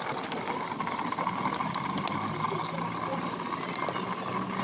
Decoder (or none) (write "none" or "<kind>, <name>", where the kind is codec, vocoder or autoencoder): none